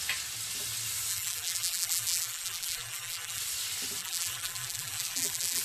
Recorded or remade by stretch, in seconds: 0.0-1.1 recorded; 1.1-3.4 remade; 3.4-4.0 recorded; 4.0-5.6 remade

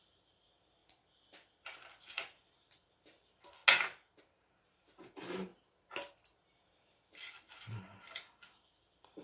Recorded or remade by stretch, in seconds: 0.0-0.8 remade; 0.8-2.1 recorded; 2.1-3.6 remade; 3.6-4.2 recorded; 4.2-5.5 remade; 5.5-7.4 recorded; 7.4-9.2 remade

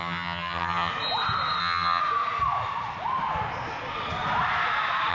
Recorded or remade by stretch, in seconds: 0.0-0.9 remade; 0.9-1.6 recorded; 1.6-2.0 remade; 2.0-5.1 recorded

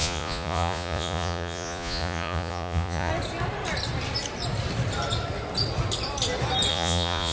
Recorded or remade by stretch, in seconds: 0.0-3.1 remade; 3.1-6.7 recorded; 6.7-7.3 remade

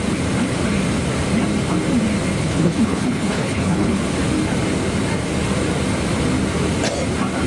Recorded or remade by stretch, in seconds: 0.0-2.3 recorded; 2.3-4.0 remade; 4.0-7.5 recorded

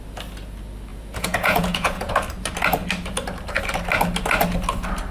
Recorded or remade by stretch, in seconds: 0.0-0.9 recorded; 0.9-2.1 remade; 2.1-5.1 recorded